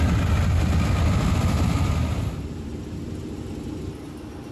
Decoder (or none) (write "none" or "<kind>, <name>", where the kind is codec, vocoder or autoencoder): none